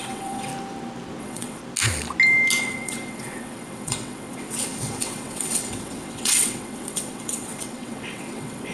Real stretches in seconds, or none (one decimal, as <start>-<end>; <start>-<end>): 0.5-1.2; 1.6-2.6